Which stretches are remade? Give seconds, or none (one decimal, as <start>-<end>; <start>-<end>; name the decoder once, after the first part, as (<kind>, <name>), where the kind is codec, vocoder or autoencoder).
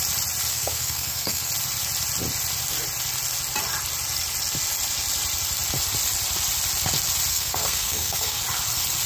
0.5-1.5 (codec, SNAC); 7.3-8.4